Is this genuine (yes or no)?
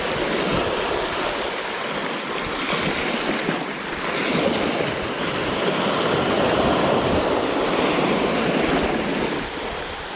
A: yes